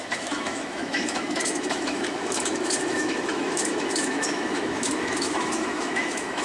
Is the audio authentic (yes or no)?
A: no